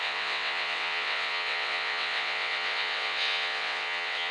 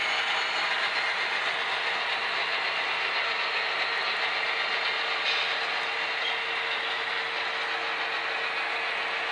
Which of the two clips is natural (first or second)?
second